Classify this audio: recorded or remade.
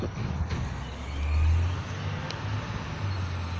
recorded